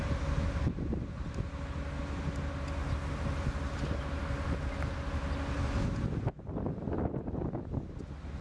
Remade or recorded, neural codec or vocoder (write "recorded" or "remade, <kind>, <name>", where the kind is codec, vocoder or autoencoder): recorded